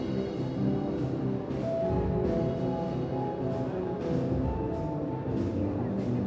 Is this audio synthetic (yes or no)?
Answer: no